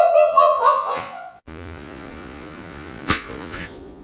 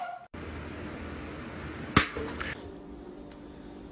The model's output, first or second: first